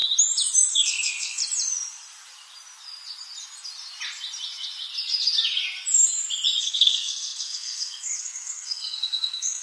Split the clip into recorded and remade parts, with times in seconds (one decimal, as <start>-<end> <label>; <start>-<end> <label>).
0.0-0.7 recorded; 0.7-1.4 remade; 1.4-6.6 recorded; 6.6-9.6 remade